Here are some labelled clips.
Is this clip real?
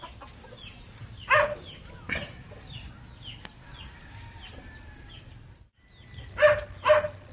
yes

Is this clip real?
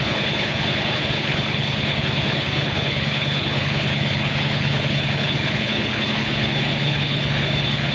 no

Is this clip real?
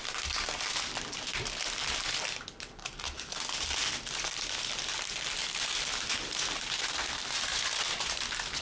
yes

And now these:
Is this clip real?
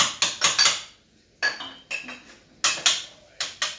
yes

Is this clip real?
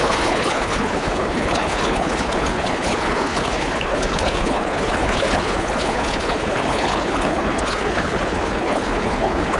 no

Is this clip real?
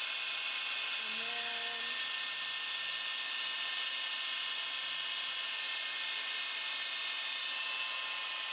yes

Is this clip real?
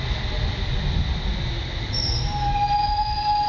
yes